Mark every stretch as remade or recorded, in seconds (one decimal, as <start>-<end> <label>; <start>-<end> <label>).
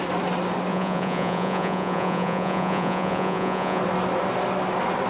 0.0-0.7 recorded; 0.7-3.8 remade; 3.8-5.1 recorded